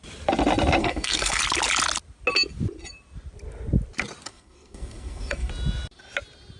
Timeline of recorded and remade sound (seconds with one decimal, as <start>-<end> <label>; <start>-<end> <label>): 0.0-0.8 recorded; 0.8-1.4 remade; 1.4-4.3 recorded; 4.3-5.5 remade; 5.5-6.6 recorded